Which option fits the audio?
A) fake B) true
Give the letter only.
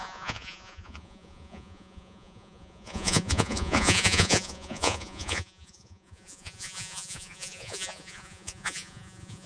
A